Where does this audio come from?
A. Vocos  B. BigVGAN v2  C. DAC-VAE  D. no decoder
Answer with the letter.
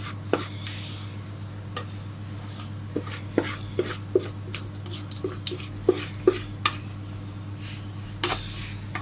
D